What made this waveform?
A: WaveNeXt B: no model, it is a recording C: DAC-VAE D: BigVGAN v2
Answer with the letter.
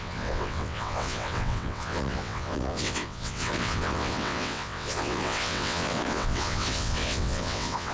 A